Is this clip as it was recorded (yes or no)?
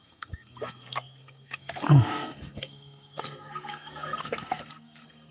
no